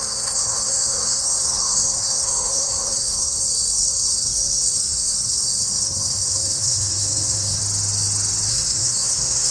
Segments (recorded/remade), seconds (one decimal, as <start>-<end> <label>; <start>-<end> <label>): 0.0-7.6 remade; 7.6-8.5 recorded; 8.5-9.5 remade